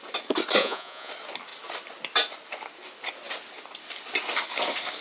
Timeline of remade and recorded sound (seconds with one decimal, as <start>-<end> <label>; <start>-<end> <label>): 0.0-0.6 recorded; 0.6-1.1 remade; 1.1-5.0 recorded